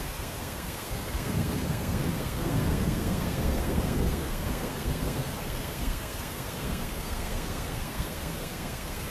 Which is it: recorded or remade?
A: remade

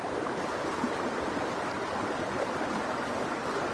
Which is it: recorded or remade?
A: recorded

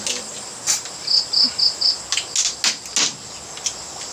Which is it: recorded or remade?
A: recorded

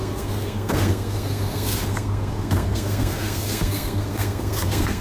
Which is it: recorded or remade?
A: remade